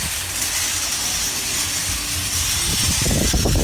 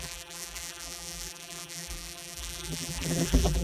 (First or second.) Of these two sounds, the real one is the first